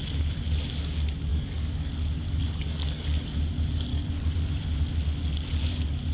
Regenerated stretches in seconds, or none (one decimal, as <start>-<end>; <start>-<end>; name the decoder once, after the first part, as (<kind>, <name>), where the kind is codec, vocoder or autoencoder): 1.3-1.9 (codec, DAC); 2.4-3.3; 3.9-4.5